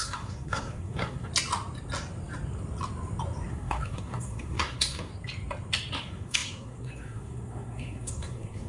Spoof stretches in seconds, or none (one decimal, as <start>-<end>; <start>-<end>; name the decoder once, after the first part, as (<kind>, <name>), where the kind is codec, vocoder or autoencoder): 0.0-1.3 (codec, SNAC); 3.5-5.1; 6.0-8.7